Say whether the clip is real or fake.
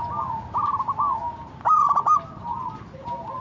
real